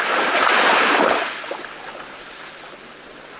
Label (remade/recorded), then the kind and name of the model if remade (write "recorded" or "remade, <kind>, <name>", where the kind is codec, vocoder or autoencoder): recorded